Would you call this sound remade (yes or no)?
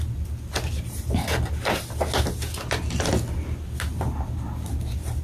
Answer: no